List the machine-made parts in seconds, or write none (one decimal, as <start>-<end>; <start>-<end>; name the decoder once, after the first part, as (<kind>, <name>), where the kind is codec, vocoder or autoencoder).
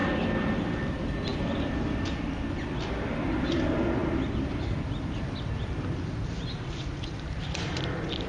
none